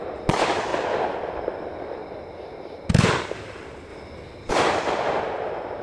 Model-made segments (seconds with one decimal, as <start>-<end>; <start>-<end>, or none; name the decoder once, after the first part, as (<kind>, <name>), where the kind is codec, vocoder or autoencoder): 0.0-0.7 (vocoder, BigVGAN v2); 1.2-2.0; 3.3-3.9; 4.5-5.8